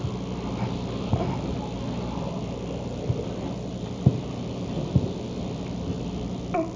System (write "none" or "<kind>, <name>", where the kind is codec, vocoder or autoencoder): none